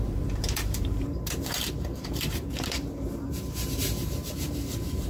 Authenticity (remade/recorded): remade